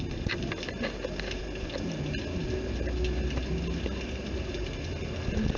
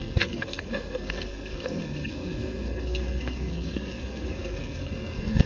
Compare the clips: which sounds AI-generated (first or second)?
second